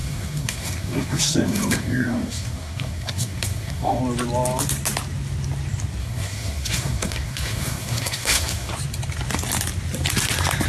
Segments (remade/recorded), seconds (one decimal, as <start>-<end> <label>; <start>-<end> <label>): 0.0-4.0 remade; 4.0-6.0 recorded; 6.0-8.7 remade; 8.7-10.7 recorded